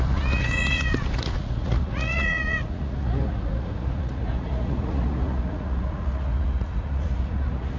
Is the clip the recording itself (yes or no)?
no